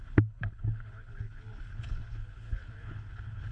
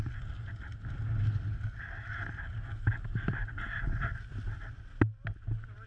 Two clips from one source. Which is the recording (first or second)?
second